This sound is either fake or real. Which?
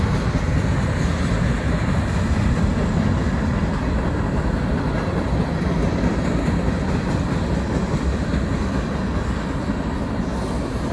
real